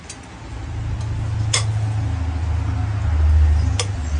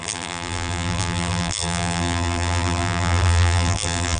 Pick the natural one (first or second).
first